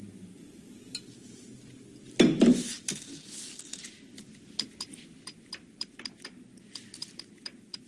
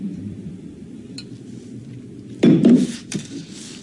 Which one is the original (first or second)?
first